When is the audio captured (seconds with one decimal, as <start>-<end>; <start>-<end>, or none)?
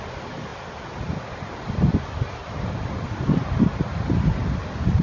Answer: 0.0-5.0